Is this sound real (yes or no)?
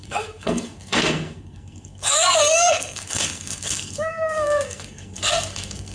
no